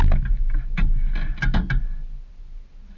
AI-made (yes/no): no